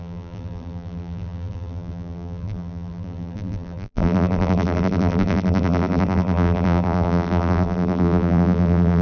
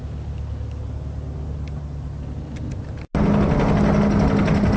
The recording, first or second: second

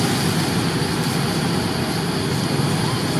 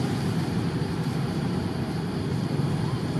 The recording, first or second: first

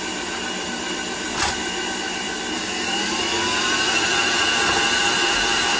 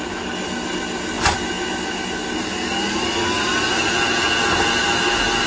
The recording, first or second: second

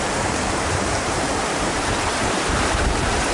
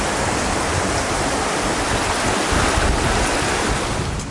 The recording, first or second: second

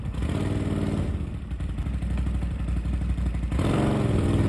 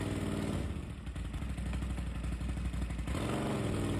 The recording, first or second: second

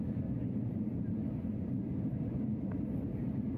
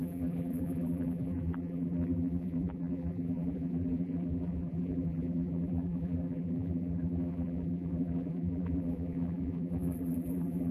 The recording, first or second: first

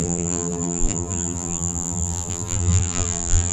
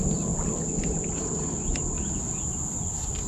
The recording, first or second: second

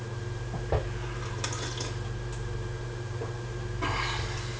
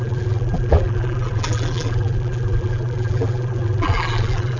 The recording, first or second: first